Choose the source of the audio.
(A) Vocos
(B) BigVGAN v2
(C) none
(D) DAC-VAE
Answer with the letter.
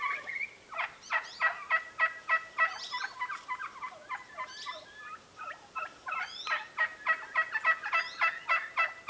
C